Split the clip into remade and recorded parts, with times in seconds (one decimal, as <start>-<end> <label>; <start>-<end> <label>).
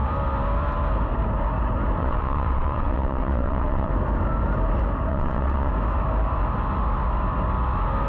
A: 0.0-2.0 recorded; 2.0-3.9 remade; 3.9-5.1 recorded; 5.1-5.7 remade; 5.7-8.1 recorded